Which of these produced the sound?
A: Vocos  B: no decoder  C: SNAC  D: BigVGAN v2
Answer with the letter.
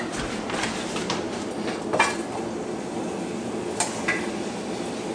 B